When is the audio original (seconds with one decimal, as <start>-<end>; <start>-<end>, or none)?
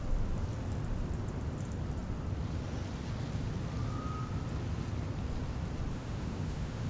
0.0-5.9